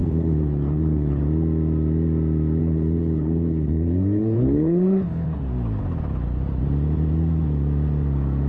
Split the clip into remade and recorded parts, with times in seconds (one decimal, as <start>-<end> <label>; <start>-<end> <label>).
0.0-1.2 remade; 1.2-2.6 recorded; 2.6-5.4 remade; 5.4-8.5 recorded